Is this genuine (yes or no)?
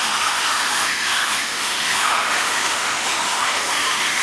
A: no